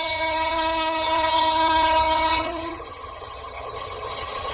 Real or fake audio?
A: fake